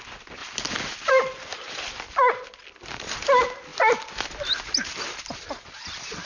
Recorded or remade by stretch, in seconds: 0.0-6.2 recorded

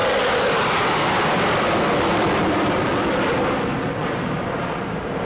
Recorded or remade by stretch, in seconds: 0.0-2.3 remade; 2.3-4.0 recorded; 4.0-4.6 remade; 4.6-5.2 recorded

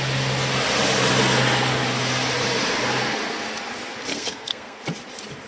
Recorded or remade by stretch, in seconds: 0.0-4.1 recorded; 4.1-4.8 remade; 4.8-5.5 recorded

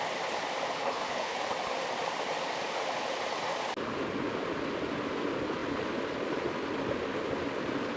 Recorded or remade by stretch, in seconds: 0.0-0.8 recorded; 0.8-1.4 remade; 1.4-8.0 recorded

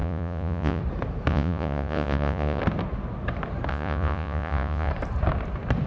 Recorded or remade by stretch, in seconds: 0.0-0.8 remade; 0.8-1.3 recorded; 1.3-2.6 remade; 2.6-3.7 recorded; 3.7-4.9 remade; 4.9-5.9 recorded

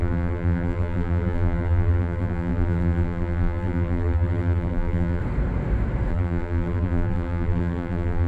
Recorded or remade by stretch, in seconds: 0.0-5.2 remade; 5.2-6.1 recorded; 6.1-8.3 remade

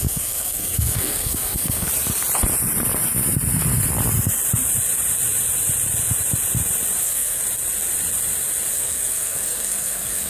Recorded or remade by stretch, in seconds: 0.0-1.9 remade; 1.9-7.0 recorded; 7.0-7.4 remade; 7.4-8.7 recorded; 8.7-10.3 remade